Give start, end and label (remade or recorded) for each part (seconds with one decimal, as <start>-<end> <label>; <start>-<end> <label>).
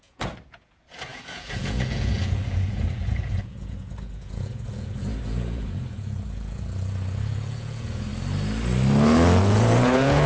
0.0-8.1 remade; 8.1-9.4 recorded; 9.4-10.3 remade